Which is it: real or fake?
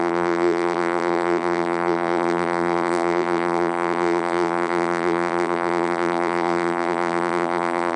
fake